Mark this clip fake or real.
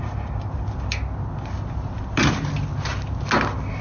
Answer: real